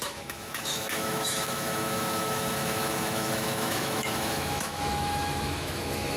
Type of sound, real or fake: fake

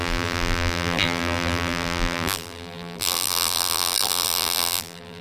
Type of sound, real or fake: fake